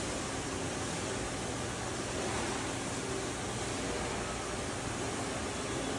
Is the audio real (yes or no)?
yes